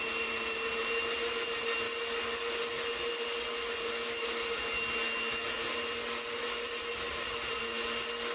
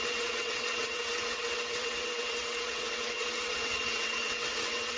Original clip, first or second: first